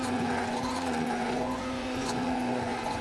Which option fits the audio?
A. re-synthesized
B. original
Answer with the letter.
A